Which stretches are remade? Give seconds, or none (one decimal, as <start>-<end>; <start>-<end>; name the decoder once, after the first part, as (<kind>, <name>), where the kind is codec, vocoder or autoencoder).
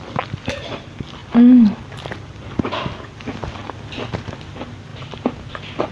none